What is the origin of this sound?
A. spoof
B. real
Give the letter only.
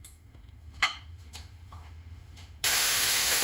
A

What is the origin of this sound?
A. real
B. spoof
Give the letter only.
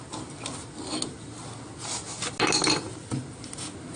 A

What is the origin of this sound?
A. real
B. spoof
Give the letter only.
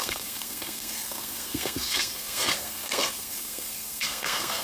B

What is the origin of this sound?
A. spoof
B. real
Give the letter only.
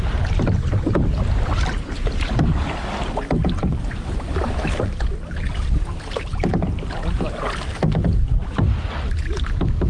B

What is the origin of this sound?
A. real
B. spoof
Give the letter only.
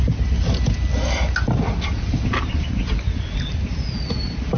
A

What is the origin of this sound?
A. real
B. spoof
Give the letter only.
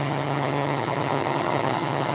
B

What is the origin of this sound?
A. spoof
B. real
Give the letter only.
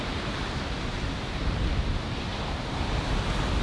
A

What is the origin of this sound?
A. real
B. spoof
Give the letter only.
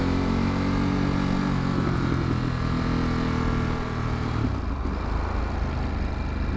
A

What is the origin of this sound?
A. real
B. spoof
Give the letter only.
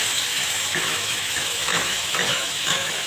B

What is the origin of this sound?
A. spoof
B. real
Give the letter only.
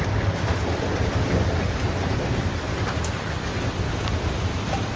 A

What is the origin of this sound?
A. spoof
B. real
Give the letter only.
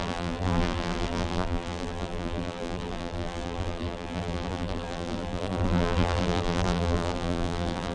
A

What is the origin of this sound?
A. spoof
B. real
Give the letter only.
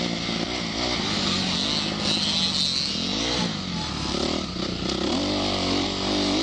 B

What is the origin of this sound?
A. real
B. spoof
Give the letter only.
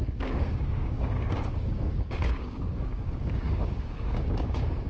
B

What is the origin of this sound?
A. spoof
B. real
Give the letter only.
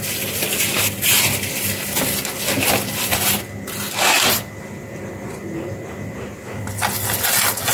B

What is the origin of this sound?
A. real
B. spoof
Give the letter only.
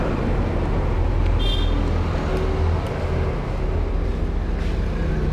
A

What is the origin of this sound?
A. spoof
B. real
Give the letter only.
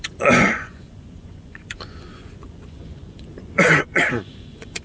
A